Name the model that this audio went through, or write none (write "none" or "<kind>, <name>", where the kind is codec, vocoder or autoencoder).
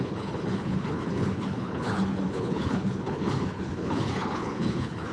codec, HILCodec